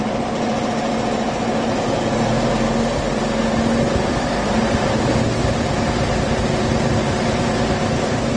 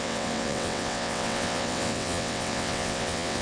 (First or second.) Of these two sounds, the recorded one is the first